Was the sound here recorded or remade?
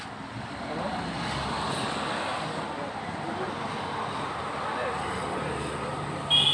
recorded